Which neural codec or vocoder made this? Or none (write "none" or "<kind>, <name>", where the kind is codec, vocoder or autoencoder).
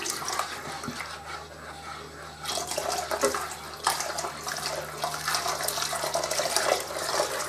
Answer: none